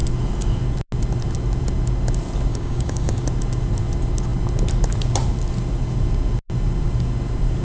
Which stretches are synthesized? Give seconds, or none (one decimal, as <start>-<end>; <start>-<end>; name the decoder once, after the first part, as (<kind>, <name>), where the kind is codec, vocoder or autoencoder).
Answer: 2.5-3.2 (codec, DAC)